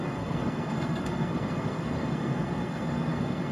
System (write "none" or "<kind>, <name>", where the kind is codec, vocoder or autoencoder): codec, SNAC